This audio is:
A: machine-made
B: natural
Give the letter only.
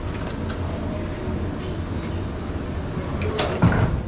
B